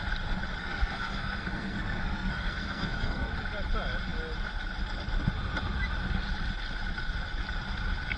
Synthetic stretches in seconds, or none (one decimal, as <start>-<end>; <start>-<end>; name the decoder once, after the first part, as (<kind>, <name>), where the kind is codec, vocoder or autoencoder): 0.6-3.3 (codec, SNAC)

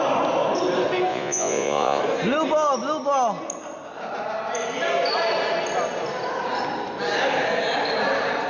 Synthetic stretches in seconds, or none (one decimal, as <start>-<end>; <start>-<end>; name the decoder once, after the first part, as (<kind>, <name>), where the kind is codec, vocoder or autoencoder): 1.1-2.0 (vocoder, Vocos)

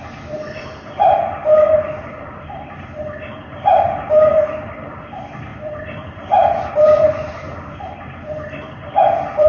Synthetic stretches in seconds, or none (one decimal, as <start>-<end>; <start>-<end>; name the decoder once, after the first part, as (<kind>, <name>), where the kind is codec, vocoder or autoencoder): 1.4-5.0 (vocoder, BigVGAN v2); 5.5-9.0

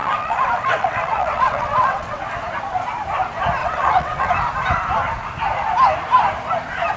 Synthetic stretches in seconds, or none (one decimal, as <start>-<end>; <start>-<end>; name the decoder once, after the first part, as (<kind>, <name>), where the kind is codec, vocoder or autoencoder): 0.0-2.2 (vocoder, WaveNeXt); 3.6-4.3